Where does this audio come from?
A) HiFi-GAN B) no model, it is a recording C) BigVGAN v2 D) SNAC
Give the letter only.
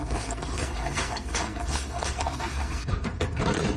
D